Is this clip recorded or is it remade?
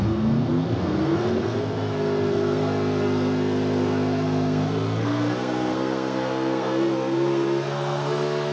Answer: remade